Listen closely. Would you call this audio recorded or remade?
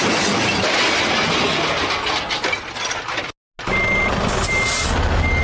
recorded